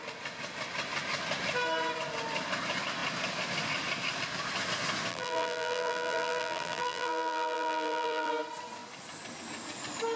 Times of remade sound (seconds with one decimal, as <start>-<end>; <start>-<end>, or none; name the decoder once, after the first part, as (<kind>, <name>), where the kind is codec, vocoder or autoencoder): 5.1-8.3 (vocoder, BigVGAN v2)